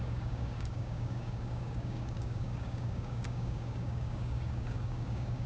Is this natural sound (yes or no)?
no